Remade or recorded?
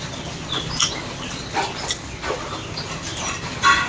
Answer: recorded